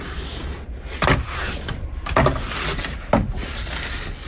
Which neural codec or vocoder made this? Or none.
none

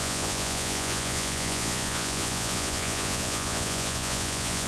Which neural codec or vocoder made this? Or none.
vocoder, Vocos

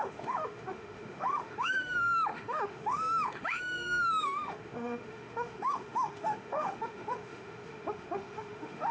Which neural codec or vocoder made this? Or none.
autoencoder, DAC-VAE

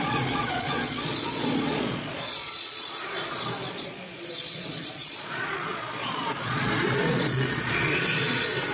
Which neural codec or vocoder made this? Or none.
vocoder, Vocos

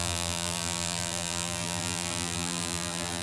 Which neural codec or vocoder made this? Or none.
vocoder, BigVGAN v2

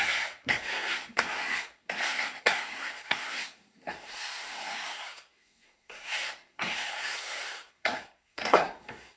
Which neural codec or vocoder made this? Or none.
codec, SNAC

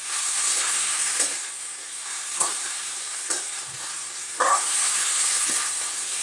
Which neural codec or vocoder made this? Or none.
codec, SNAC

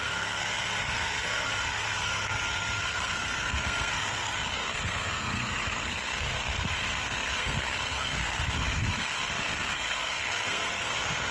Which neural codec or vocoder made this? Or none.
codec, SNAC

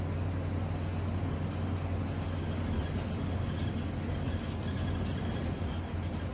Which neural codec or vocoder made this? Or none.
none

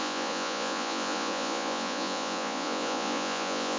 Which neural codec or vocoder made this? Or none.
vocoder, Vocos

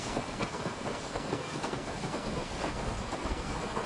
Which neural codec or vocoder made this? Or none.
codec, SNAC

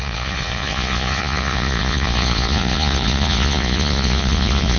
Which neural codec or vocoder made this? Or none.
vocoder, Vocos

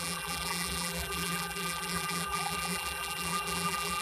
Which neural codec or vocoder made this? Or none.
vocoder, BigVGAN v2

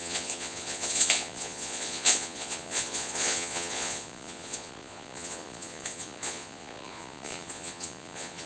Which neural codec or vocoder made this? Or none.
vocoder, Vocos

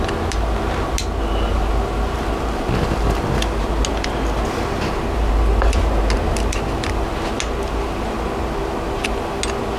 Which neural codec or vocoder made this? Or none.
none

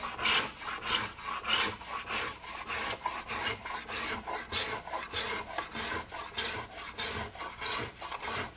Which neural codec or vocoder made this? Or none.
none